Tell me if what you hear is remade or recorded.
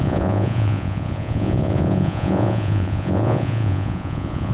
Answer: remade